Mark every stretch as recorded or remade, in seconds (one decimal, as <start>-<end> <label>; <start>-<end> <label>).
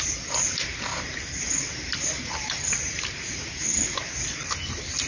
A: 0.0-0.9 recorded; 0.9-4.0 remade; 4.0-5.1 recorded